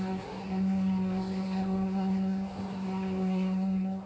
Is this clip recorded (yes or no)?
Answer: no